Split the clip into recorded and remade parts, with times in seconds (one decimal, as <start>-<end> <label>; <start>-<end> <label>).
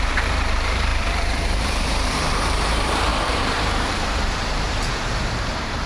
0.0-5.9 remade